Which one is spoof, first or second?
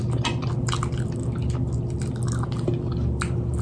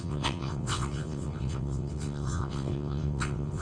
second